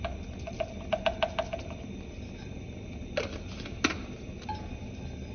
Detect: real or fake real